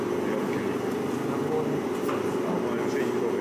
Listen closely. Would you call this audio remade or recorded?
recorded